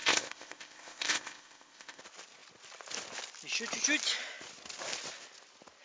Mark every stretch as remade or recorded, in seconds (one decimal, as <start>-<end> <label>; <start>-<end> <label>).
0.0-2.0 remade; 2.0-5.8 recorded